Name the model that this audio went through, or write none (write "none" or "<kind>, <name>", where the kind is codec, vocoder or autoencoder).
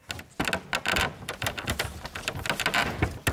none